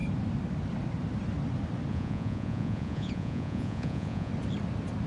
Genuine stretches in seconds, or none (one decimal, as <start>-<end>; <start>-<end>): 0.0-1.9; 4.3-5.1